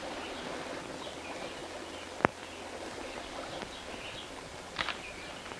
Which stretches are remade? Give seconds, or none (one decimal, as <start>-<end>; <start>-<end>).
none